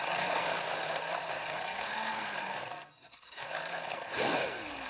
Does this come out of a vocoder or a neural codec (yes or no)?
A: yes